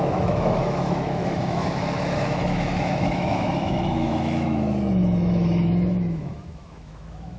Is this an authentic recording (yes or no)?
no